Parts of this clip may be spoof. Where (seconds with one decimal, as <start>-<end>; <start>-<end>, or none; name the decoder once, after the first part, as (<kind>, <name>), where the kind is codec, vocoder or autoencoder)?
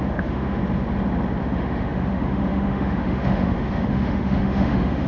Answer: 0.0-0.6 (autoencoder, DAC-VAE); 1.4-5.1